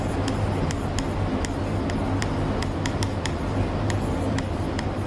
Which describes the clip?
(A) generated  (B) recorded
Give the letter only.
B